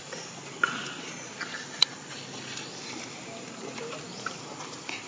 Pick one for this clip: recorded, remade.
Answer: recorded